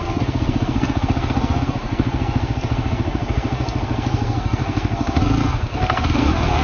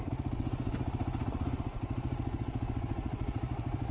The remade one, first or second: first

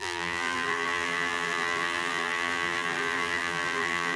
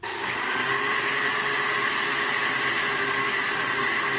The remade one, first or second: first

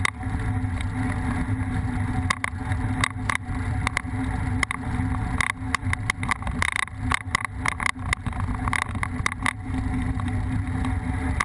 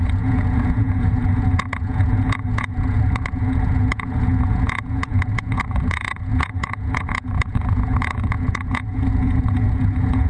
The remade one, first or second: second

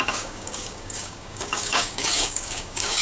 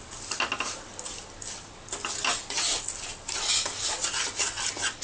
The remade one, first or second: first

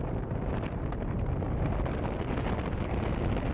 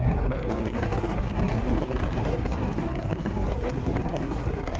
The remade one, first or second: second